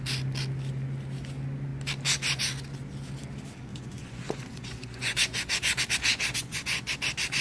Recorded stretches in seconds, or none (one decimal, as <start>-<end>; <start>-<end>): 0.0-3.7; 5.8-6.3; 6.9-7.4